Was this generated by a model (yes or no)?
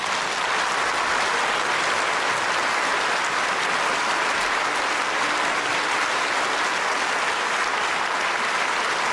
no